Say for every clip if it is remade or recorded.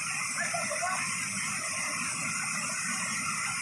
recorded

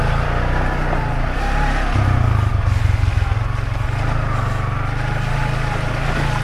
recorded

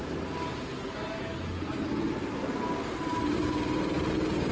recorded